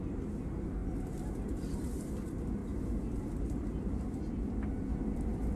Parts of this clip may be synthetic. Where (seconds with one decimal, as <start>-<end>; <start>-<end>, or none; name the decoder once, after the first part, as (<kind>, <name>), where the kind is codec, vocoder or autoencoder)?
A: none